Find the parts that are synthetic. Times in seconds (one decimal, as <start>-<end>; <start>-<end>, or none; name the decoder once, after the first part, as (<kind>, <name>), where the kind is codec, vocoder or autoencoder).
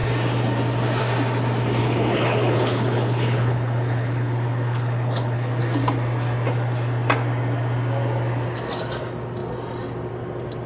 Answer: 1.8-5.6 (codec, HILCodec)